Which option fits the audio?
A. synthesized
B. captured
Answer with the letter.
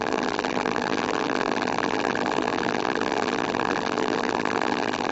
A